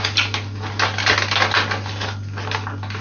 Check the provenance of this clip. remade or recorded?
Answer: recorded